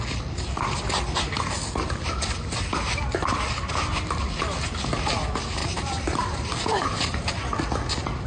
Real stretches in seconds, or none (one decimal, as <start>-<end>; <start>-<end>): 0.0-5.6; 7.3-8.3